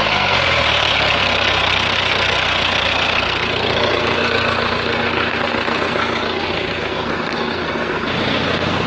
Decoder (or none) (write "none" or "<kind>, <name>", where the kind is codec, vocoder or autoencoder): codec, SNAC